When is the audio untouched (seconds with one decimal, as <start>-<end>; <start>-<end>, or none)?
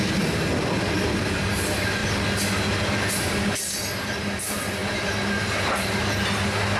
0.0-6.8